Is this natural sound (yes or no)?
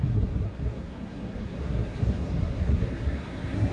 no